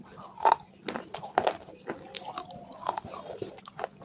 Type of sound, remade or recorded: recorded